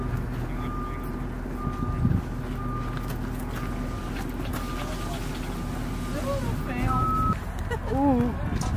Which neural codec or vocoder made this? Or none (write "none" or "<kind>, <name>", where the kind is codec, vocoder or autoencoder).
none